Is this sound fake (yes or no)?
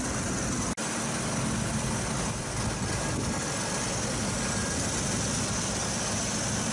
no